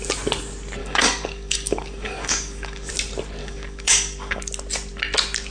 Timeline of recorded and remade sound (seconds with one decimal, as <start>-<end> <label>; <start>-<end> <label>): 0.0-0.8 recorded; 0.8-2.9 remade; 2.9-3.4 recorded; 3.4-4.4 remade; 4.4-5.5 recorded